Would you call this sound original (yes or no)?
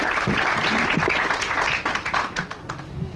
yes